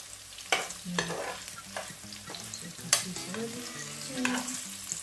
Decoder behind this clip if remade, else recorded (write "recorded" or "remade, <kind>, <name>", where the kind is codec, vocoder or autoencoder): recorded